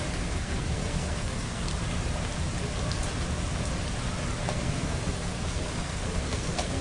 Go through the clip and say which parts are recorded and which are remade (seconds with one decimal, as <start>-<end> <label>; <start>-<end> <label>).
0.0-1.7 remade; 1.7-4.4 recorded; 4.4-6.8 remade